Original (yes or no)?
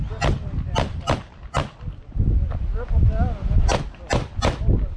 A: yes